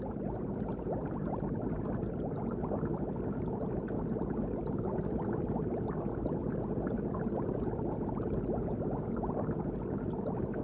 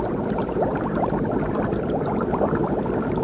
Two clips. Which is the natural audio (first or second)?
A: first